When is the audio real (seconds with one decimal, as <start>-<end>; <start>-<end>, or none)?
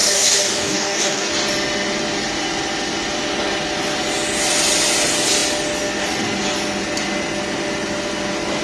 1.3-8.6